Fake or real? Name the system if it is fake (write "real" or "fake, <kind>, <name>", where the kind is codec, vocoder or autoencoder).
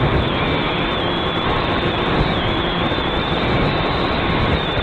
fake, vocoder, BigVGAN v2